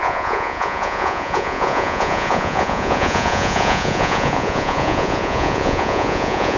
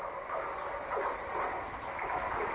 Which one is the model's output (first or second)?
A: first